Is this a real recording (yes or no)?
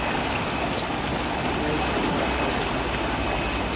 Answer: yes